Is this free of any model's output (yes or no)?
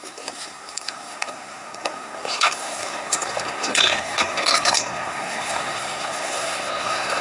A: no